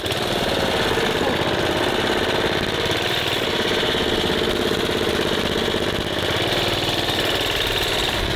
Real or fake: real